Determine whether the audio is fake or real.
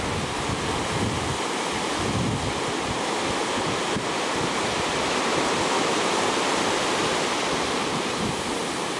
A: real